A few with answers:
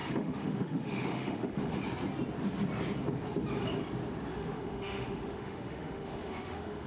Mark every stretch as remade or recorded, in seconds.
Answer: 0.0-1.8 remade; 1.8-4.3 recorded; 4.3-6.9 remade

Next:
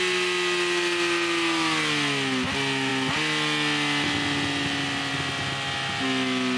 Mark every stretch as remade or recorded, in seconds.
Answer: 0.0-6.6 recorded

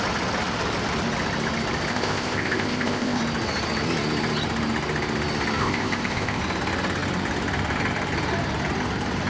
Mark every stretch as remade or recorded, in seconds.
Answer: 0.0-1.9 recorded; 1.9-3.2 remade; 3.2-5.6 recorded; 5.6-6.4 remade; 6.4-9.3 recorded